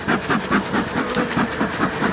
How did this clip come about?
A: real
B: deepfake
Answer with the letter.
A